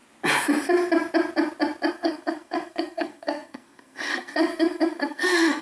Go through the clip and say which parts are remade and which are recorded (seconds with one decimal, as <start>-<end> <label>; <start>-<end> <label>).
0.0-1.9 recorded; 1.9-5.6 remade